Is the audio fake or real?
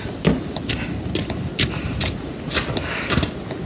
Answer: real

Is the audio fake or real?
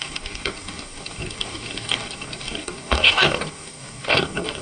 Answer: fake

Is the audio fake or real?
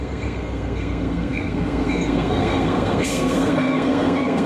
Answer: fake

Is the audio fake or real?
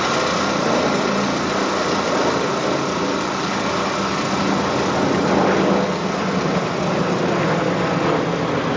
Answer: real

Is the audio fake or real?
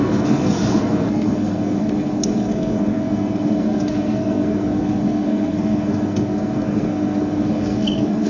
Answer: fake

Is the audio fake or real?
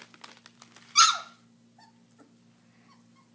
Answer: real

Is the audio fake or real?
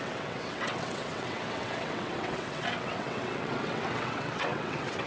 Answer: fake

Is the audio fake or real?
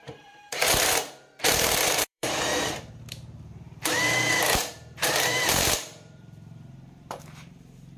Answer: fake